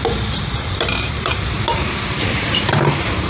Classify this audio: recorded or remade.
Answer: remade